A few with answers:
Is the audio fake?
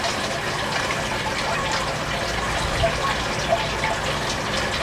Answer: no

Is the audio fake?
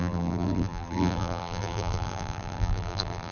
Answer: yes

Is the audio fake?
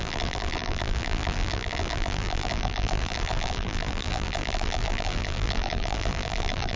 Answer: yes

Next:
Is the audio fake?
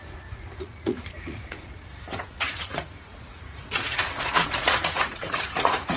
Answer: yes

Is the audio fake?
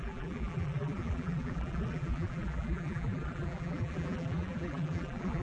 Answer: yes